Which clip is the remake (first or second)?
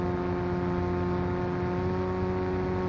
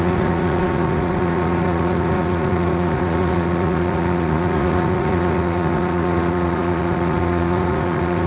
second